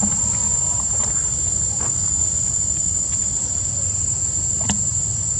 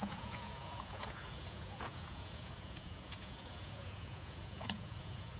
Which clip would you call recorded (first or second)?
first